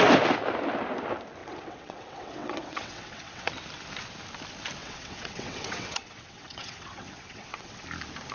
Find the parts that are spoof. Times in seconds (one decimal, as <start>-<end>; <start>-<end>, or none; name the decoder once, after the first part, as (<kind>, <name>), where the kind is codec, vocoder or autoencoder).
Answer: 1.4-3.5 (vocoder, WaveNeXt); 4.8-7.8